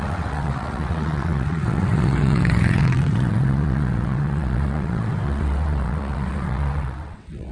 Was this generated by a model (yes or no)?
yes